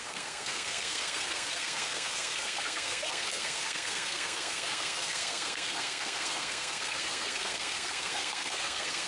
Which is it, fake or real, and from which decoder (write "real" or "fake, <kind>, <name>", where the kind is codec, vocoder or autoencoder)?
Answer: fake, codec, SNAC